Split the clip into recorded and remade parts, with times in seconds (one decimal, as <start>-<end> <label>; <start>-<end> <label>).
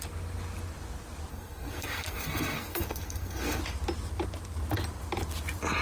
0.0-1.3 recorded; 1.3-3.6 remade; 3.6-5.8 recorded